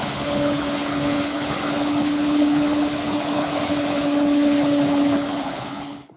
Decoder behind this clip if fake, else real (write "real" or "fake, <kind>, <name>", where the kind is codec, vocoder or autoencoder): fake, codec, HILCodec